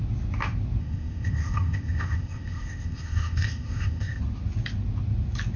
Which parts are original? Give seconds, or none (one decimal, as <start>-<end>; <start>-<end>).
0.0-0.8; 4.2-5.6